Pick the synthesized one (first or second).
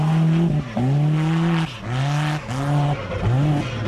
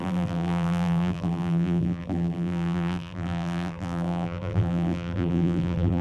second